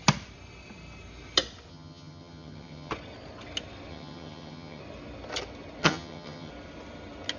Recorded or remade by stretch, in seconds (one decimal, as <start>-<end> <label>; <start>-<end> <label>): 0.0-1.7 recorded; 1.7-2.9 remade; 2.9-3.9 recorded; 3.9-4.8 remade; 4.8-5.8 recorded; 5.8-6.5 remade; 6.5-7.4 recorded